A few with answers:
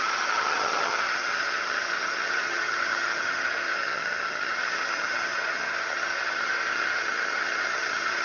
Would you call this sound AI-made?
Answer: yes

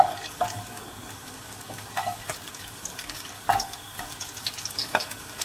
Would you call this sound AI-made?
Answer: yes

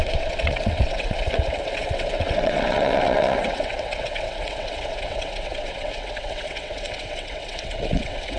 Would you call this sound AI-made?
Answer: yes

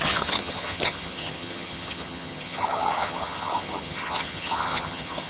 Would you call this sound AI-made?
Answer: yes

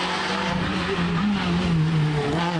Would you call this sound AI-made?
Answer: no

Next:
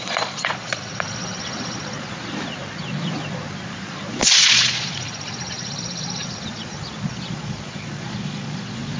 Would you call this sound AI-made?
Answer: yes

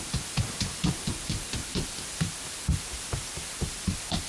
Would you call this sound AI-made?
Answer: no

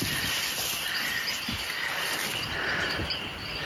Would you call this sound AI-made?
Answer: no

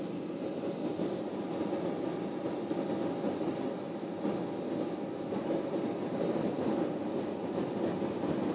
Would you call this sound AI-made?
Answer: no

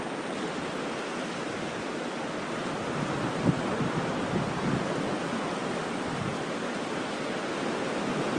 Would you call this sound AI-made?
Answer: no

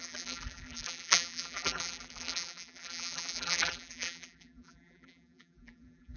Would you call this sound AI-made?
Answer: yes